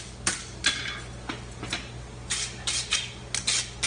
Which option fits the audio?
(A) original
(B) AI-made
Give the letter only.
A